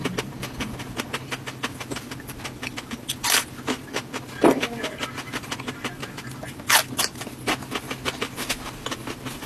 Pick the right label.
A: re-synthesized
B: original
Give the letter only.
B